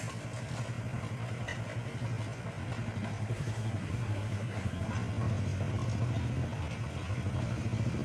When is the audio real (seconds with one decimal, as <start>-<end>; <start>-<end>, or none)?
0.0-3.2; 4.9-8.0